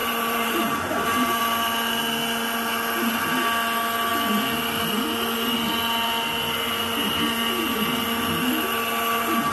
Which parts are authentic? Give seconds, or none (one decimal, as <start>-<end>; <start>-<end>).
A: 1.4-9.5